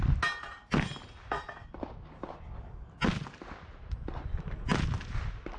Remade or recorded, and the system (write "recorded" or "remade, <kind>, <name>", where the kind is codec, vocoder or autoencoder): recorded